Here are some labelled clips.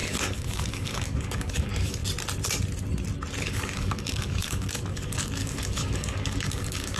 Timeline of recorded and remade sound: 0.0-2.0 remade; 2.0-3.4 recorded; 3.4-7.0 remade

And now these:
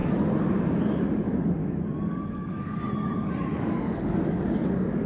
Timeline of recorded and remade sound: 0.0-1.6 recorded; 1.6-2.8 remade; 2.8-3.5 recorded; 3.5-5.1 remade

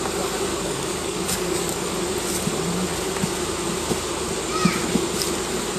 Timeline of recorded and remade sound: 0.0-0.5 recorded; 0.5-1.9 remade; 1.9-5.8 recorded

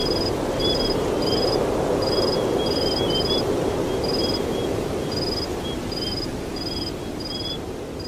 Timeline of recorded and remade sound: 0.0-8.1 recorded

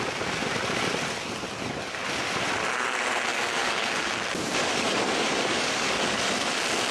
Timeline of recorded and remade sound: 0.0-3.3 recorded; 3.3-4.1 remade; 4.1-4.6 recorded; 4.6-6.5 remade; 6.5-6.9 recorded

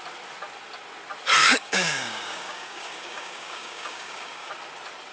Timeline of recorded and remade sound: 0.0-1.4 recorded; 1.4-4.5 remade; 4.5-5.1 recorded